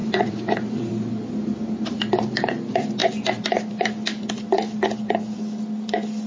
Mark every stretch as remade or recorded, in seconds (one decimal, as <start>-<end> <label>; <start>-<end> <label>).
0.0-0.9 remade; 0.9-6.3 recorded